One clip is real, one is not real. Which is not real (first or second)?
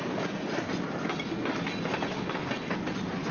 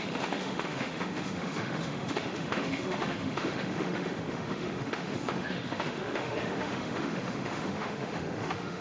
second